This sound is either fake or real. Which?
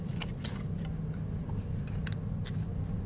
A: real